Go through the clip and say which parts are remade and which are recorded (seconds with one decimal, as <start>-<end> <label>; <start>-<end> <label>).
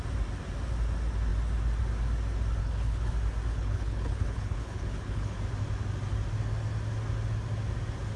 0.0-2.6 recorded; 2.6-3.1 remade; 3.1-3.5 recorded; 3.5-5.4 remade; 5.4-8.2 recorded